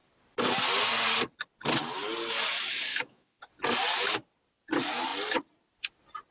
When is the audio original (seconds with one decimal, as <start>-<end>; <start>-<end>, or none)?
0.0-2.9; 3.4-6.3